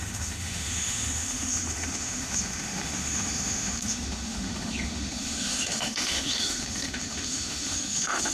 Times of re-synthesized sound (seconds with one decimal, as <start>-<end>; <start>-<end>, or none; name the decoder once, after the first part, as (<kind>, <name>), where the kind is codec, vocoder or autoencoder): 0.0-8.3 (autoencoder, DAC-VAE)